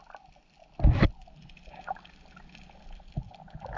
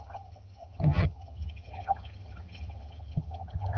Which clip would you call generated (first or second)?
second